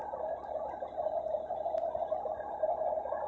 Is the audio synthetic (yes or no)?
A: no